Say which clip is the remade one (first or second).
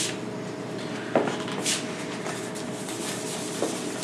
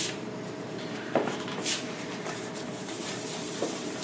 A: second